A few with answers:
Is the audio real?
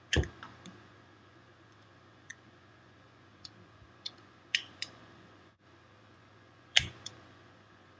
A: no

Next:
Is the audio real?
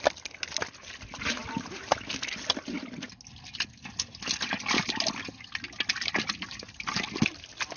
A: yes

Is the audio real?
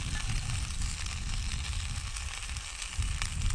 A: yes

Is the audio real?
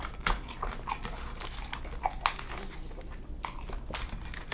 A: yes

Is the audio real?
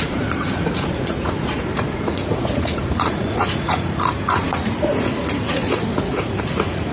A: no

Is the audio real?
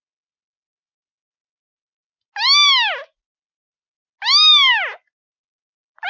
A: yes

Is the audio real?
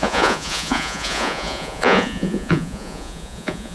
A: no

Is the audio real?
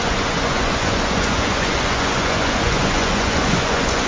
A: no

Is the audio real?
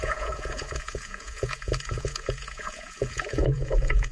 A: no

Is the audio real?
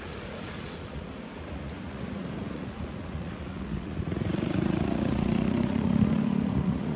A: no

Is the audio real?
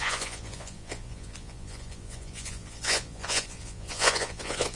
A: no